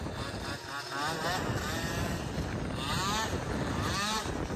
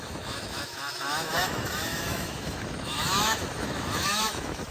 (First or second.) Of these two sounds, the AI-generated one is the second